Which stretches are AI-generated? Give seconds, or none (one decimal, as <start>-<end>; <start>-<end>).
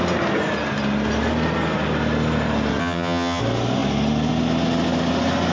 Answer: 2.8-3.4